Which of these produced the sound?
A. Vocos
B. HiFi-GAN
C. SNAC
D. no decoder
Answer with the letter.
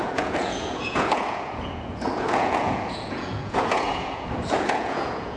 A